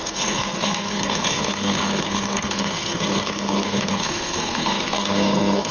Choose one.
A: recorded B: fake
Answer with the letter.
B